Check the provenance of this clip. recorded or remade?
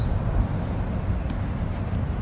recorded